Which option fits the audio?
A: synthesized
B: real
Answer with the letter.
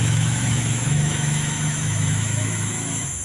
A